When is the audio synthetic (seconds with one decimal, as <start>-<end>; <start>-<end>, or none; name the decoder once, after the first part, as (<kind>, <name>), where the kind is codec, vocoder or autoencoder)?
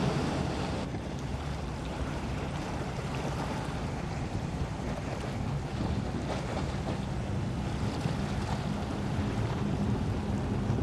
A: 0.0-5.0 (vocoder, BigVGAN v2); 8.9-10.4